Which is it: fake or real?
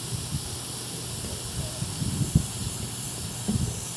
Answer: real